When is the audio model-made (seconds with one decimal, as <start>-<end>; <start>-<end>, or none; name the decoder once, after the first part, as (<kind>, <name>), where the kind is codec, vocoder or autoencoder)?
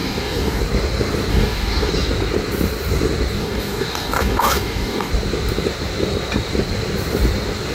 0.0-0.6 (codec, DAC); 1.3-1.9; 3.4-5.1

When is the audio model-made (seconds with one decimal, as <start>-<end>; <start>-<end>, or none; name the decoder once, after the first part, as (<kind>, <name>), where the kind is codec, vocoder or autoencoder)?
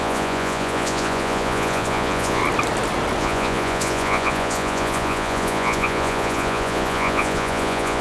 0.0-2.4 (vocoder, Vocos); 3.2-8.0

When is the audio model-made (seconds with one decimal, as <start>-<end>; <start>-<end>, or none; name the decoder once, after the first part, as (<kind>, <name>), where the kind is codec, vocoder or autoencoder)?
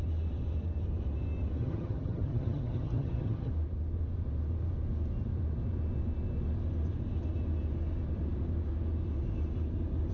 1.6-3.5 (vocoder, HiFi-GAN)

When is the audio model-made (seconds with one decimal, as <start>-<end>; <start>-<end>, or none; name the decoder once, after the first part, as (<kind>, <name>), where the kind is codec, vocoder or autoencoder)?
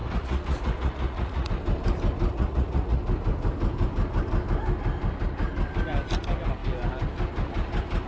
0.0-1.5 (vocoder, Vocos); 2.3-3.0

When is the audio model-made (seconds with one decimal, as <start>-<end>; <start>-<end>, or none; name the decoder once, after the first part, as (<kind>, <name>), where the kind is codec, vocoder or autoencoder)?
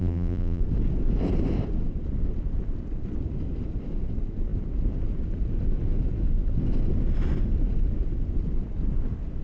0.0-0.6 (vocoder, BigVGAN v2)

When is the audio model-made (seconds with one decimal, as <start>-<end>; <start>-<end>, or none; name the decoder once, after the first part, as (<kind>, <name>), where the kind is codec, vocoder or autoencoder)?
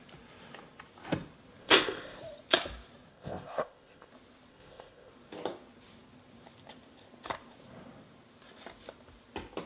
1.6-2.2 (codec, ZipCodec); 3.1-4.1; 4.5-5.1